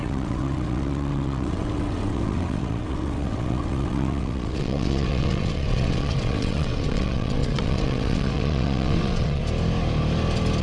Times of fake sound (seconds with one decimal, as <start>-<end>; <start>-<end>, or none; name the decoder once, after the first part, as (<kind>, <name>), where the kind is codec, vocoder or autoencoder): 0.0-9.4 (vocoder, WaveNeXt)